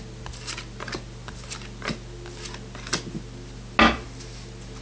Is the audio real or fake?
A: real